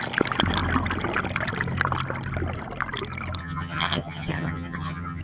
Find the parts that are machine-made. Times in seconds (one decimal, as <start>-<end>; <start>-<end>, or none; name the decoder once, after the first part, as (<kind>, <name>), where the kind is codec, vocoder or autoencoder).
3.4-5.2 (vocoder, HiFi-GAN)

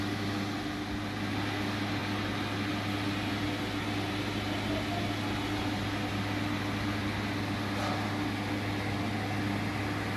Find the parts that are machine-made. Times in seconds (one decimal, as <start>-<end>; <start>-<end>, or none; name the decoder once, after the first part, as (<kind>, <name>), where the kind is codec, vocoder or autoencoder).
none

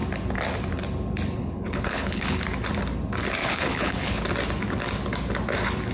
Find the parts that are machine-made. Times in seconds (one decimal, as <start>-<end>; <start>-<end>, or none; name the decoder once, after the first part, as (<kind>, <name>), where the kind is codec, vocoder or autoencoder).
1.4-2.4 (codec, HILCodec); 3.4-4.2

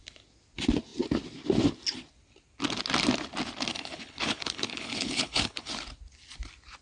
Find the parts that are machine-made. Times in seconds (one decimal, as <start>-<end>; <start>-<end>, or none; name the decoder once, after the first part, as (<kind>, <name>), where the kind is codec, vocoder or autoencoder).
3.7-5.7 (codec, HILCodec)

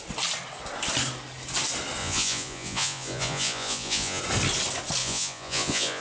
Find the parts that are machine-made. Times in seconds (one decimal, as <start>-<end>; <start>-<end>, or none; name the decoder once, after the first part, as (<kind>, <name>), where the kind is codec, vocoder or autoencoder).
2.0-4.2 (vocoder, Vocos); 5.0-6.0